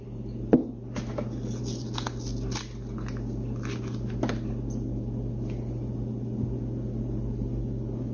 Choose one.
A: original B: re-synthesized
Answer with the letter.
A